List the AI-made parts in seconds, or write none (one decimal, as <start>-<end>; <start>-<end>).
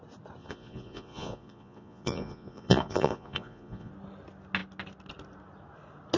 0.4-3.9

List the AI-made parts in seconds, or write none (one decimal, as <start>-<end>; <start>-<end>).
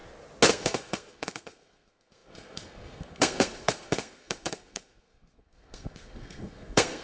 0.5-7.0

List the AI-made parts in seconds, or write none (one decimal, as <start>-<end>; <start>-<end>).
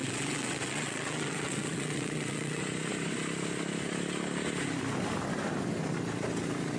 0.0-2.6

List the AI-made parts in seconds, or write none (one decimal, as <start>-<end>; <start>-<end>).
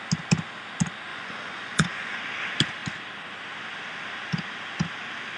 1.1-2.2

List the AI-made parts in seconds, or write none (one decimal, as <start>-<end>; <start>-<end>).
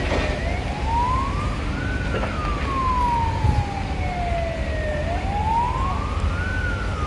none